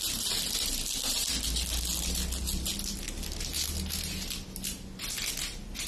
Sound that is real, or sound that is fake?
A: real